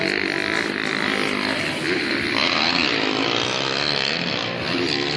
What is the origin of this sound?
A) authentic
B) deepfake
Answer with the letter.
A